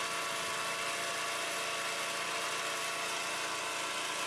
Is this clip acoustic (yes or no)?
yes